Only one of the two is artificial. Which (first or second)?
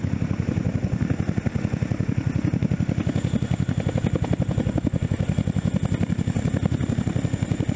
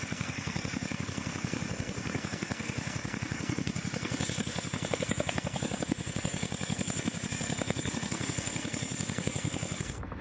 second